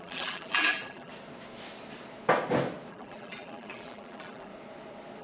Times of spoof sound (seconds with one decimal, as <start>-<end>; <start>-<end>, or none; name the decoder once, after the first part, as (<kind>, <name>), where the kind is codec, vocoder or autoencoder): 0.0-1.1 (vocoder, BigVGAN v2); 2.9-4.5